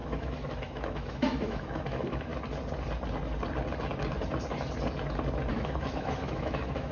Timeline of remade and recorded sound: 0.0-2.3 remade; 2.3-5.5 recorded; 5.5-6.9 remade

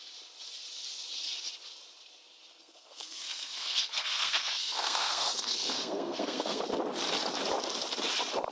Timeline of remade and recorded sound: 0.0-2.5 recorded; 2.5-6.6 remade; 6.6-8.5 recorded

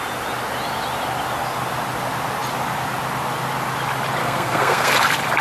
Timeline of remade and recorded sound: 0.0-4.2 recorded; 4.2-4.9 remade; 4.9-5.4 recorded

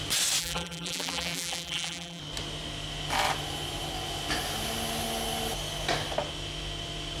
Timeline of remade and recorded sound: 0.0-0.4 recorded; 0.4-2.2 remade; 2.2-7.2 recorded

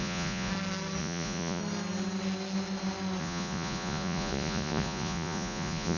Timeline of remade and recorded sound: 0.0-0.5 remade; 0.5-1.0 recorded; 1.0-1.6 remade; 1.6-3.2 recorded; 3.2-6.0 remade